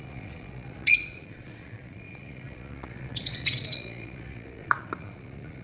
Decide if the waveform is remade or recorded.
remade